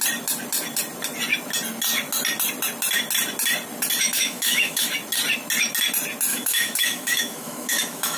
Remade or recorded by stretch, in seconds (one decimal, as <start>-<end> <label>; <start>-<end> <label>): 0.0-4.1 recorded; 4.1-4.9 remade; 4.9-6.3 recorded; 6.3-8.2 remade